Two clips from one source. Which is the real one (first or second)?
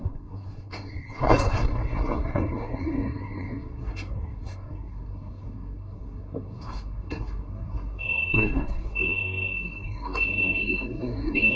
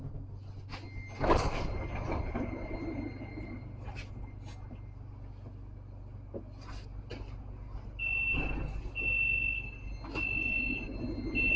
second